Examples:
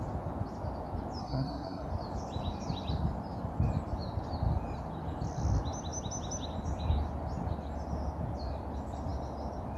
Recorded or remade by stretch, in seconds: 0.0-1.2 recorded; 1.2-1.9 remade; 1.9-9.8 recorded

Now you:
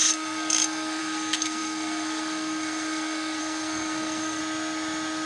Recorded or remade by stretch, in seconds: 0.0-4.4 remade; 4.4-5.3 recorded

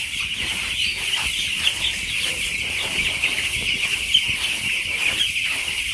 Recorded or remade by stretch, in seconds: 0.0-5.9 recorded